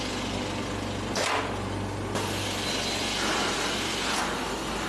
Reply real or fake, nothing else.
real